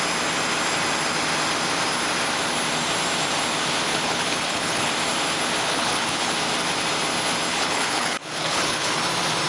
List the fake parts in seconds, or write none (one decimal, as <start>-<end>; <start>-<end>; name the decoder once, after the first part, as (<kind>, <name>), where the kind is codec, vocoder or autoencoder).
3.9-4.9 (codec, HILCodec); 5.6-6.3; 7.5-9.0